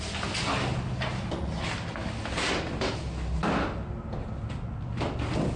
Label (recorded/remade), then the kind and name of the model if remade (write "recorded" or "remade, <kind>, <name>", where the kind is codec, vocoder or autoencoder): recorded